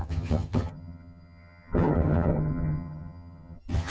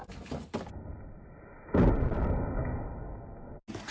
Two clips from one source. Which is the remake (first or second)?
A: first